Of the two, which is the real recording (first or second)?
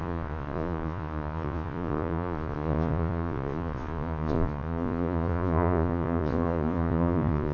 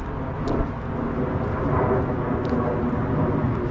second